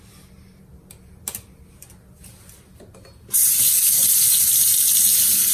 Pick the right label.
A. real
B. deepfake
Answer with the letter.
A